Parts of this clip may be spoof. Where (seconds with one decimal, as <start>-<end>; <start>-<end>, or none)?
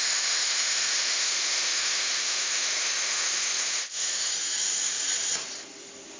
0.0-4.3